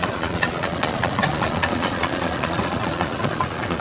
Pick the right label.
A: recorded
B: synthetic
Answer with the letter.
B